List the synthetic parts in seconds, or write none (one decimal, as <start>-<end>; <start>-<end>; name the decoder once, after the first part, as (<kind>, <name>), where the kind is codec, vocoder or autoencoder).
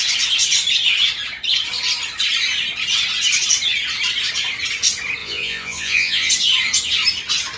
5.2-6.3 (vocoder, Vocos)